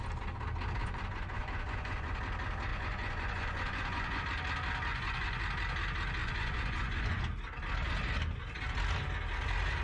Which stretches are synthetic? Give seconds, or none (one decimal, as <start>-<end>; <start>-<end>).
0.8-2.2; 2.7-4.2; 4.9-5.4; 6.2-7.2